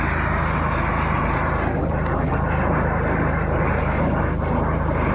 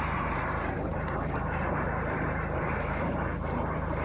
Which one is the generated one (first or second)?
second